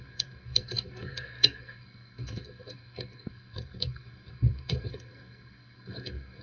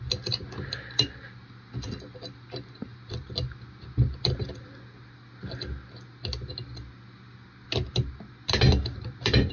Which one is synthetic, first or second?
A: first